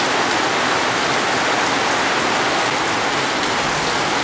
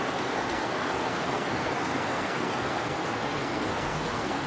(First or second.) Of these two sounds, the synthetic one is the second